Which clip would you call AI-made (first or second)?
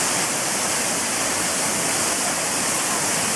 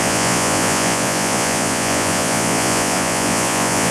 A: second